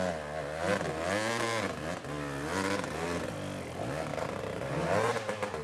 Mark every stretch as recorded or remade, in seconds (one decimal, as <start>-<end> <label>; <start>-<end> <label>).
0.0-4.1 recorded; 4.1-5.1 remade; 5.1-5.6 recorded